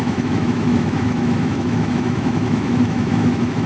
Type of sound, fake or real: fake